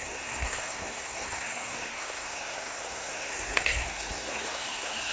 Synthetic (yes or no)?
yes